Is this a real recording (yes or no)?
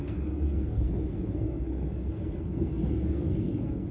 no